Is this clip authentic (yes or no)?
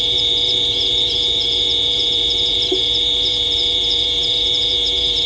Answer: no